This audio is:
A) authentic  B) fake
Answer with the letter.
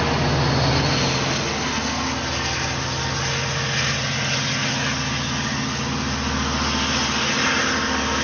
A